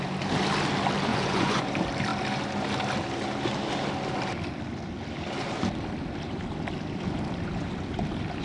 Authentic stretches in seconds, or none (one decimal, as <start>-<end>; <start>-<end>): 0.0-1.1; 1.7-8.4